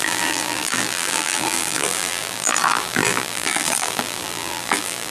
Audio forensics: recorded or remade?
remade